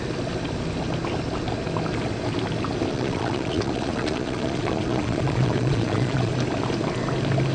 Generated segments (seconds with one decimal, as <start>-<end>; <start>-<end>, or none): 2.9-6.3